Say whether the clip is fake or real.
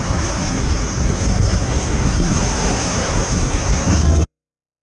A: fake